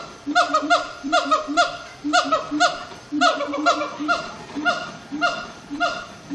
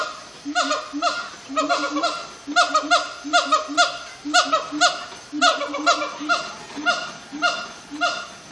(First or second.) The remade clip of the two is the first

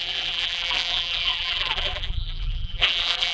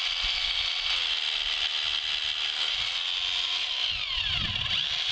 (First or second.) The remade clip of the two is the first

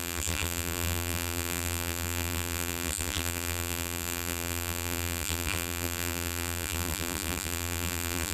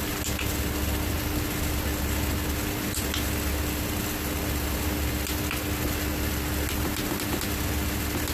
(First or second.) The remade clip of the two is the first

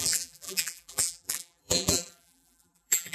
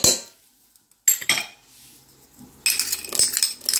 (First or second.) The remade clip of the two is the first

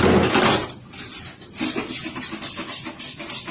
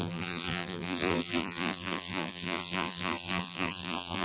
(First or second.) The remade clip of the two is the second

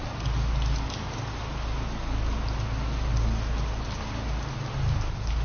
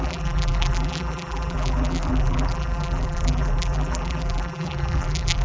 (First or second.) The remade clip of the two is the second